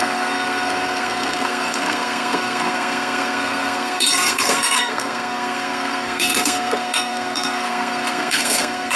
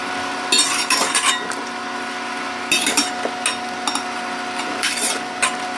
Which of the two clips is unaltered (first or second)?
second